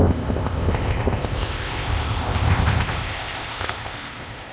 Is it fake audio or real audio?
fake